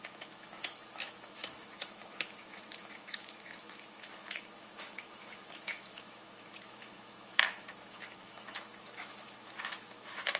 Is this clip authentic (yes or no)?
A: no